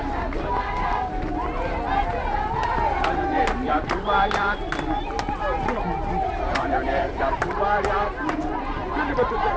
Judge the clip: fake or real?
real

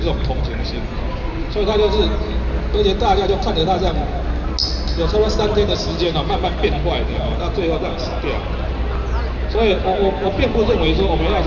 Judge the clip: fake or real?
real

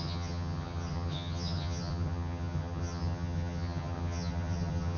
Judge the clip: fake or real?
fake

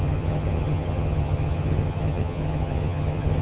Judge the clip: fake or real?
fake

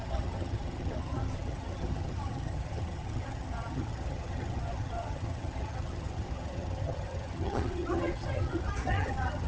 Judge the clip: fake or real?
fake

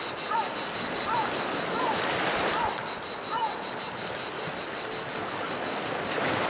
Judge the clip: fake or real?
real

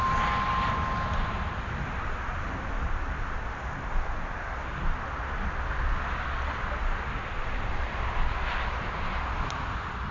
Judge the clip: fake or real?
real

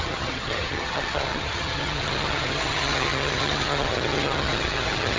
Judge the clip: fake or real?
fake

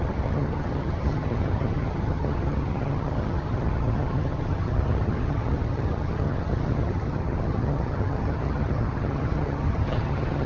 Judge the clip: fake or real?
fake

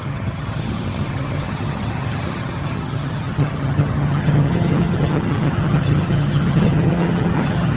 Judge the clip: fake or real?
fake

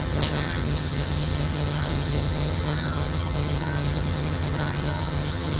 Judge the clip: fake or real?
fake